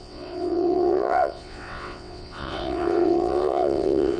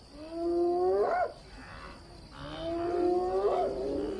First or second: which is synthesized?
first